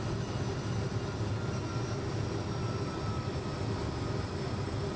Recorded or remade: recorded